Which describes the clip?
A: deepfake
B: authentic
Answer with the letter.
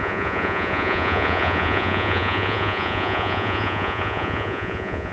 A